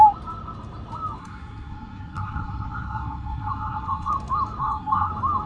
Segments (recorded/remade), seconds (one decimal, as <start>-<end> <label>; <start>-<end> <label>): 0.0-1.2 recorded; 1.2-4.1 remade; 4.1-4.6 recorded; 4.6-5.1 remade; 5.1-5.5 recorded